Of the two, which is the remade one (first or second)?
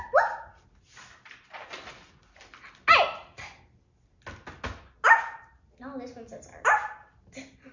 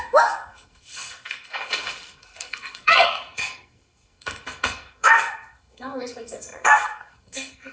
second